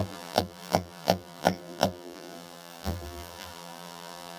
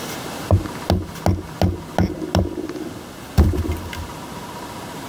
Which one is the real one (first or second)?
second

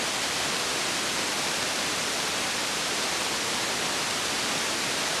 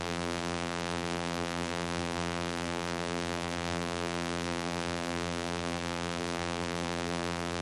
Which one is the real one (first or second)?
first